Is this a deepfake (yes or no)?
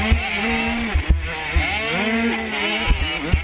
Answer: no